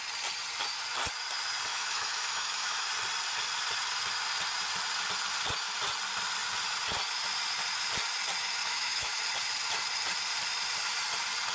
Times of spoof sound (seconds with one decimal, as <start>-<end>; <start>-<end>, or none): 1.7-2.9; 8.6-9.2